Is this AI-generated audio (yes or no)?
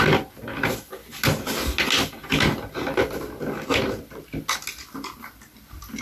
no